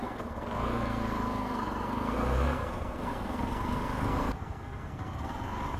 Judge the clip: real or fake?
fake